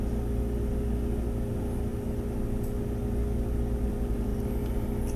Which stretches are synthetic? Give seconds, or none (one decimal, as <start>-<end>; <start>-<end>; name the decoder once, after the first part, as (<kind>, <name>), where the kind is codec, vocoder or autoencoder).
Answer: none